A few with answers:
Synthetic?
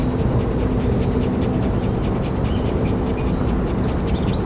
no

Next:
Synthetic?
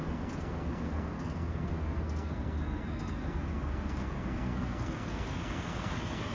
yes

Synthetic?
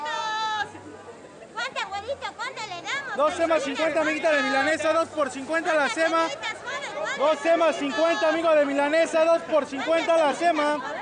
no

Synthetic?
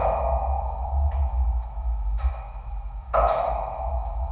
yes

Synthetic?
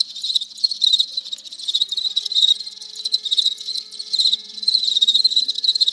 yes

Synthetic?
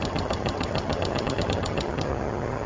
yes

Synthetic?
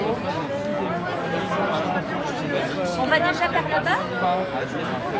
no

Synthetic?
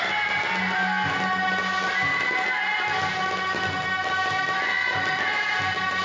no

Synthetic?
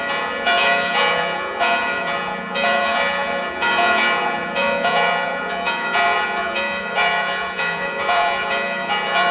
yes